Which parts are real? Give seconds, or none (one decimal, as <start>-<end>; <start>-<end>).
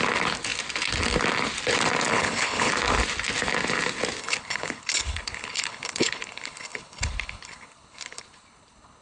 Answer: 0.0-2.1; 2.7-4.2